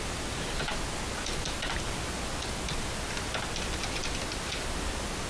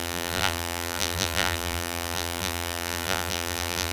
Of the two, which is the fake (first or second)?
second